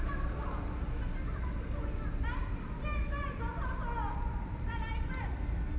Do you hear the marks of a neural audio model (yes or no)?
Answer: no